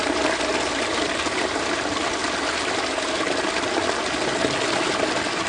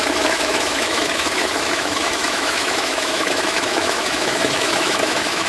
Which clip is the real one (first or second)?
first